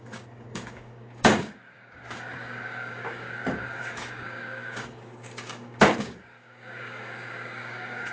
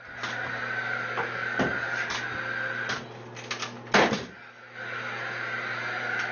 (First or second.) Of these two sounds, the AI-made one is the first